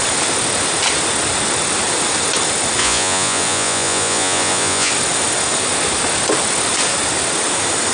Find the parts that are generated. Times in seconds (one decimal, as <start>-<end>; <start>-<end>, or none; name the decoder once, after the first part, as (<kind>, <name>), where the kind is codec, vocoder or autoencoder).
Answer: 2.8-4.9 (vocoder, Vocos)